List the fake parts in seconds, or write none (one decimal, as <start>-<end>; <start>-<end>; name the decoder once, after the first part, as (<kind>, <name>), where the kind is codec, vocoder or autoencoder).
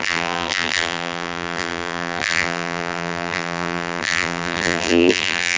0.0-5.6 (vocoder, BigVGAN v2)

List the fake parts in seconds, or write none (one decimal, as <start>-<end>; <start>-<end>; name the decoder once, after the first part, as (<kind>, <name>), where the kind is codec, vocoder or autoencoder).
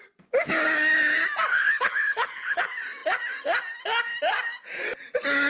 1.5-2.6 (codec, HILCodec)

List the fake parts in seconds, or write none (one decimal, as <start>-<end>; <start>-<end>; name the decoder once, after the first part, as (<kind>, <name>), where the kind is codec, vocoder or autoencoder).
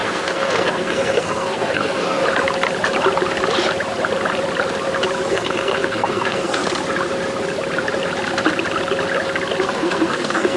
0.0-2.2 (codec, SNAC); 5.3-6.6; 9.6-10.6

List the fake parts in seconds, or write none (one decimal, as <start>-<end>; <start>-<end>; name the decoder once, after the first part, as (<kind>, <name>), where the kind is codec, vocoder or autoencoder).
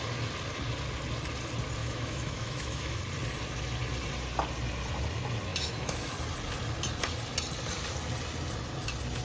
1.8-3.0 (autoencoder, DAC-VAE); 5.5-6.1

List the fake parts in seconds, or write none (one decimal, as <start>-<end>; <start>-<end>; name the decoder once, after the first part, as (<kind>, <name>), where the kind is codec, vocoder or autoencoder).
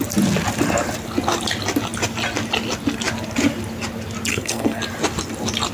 4.3-4.8 (codec, SNAC)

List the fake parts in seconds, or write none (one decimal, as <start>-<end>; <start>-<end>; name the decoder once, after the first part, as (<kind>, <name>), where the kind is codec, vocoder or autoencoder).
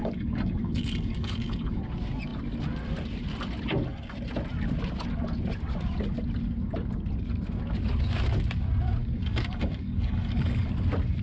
0.0-1.8 (codec, DAC); 9.0-10.7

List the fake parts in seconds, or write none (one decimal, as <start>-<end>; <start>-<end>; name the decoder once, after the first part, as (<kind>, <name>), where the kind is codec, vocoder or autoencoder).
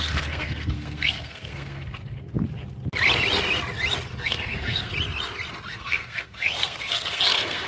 0.0-2.2 (codec, SNAC); 4.2-4.9; 5.7-7.7